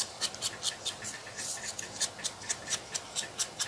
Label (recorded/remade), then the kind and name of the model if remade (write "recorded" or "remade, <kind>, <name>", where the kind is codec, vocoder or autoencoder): remade, vocoder, BigVGAN v2